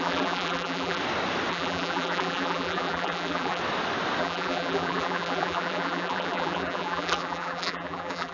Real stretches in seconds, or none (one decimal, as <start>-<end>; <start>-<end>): 1.0-1.5; 3.6-4.2